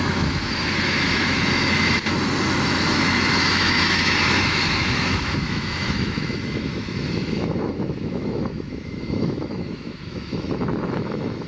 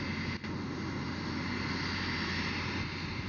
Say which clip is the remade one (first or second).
first